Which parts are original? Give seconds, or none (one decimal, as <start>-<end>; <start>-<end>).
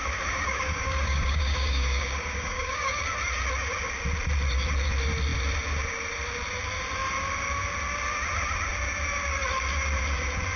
3.1-10.6